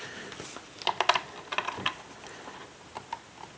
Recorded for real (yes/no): yes